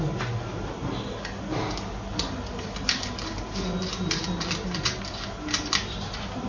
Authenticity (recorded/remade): recorded